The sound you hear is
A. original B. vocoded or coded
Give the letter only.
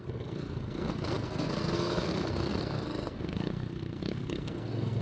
B